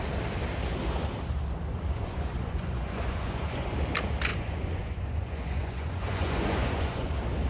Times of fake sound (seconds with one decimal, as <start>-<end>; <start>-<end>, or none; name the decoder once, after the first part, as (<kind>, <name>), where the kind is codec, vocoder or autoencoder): 1.7-3.7 (vocoder, Vocos); 4.3-7.1